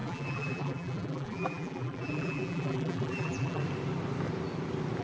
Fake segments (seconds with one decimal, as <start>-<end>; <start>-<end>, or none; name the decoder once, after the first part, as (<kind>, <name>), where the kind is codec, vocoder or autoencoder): 0.0-3.6 (vocoder, BigVGAN v2)